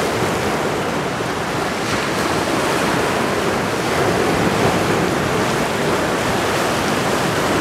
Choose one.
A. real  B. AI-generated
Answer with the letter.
A